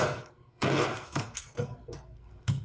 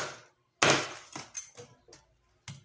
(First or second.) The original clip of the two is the second